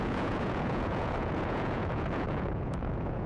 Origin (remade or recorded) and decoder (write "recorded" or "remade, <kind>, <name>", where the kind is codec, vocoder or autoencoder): remade, vocoder, Vocos